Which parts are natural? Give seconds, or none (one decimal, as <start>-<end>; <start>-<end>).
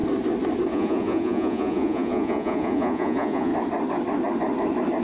0.0-0.7; 3.5-5.0